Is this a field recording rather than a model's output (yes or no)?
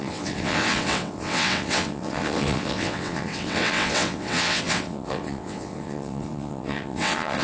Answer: no